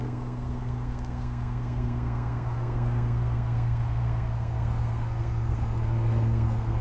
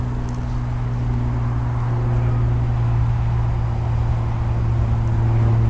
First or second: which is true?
second